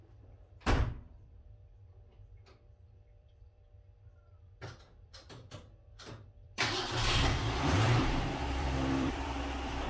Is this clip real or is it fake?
fake